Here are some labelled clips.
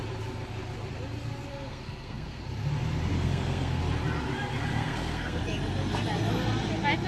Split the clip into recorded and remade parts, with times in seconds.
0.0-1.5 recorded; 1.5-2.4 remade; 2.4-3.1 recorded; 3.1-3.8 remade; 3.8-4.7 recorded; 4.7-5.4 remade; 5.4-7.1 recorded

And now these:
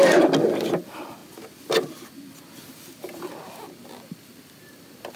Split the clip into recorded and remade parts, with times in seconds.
0.0-5.2 recorded

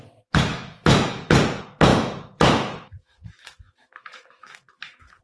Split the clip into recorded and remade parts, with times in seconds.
0.0-0.5 recorded; 0.5-1.3 remade; 1.3-1.9 recorded; 1.9-5.2 remade